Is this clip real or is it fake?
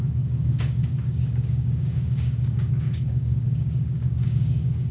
fake